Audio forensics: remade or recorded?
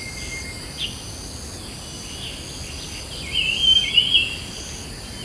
recorded